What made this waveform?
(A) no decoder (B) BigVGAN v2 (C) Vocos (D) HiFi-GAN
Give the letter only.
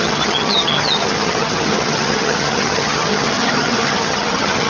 D